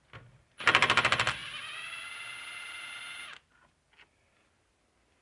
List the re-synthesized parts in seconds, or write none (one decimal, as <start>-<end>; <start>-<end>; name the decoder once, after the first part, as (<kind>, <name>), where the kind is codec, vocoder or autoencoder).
none